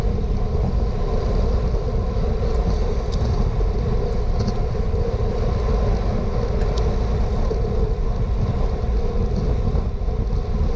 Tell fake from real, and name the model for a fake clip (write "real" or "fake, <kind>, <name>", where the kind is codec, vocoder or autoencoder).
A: real